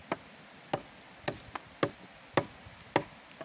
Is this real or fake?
real